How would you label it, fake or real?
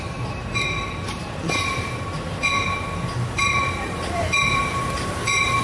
fake